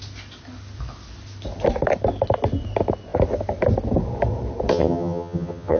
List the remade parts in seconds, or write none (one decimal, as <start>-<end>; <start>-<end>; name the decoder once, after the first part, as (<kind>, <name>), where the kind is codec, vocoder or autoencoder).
4.7-5.8 (vocoder, HiFi-GAN)